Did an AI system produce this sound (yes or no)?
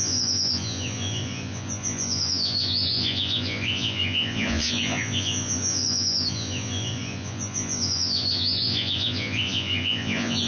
yes